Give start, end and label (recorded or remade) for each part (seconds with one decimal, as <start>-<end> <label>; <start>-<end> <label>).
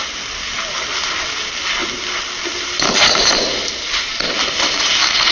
0.0-5.3 recorded